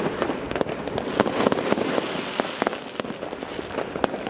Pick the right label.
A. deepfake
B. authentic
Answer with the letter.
B